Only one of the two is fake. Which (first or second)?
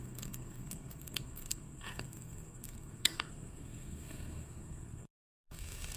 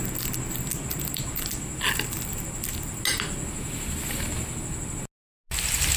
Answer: first